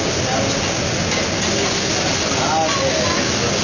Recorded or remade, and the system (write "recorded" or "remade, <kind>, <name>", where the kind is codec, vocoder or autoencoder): recorded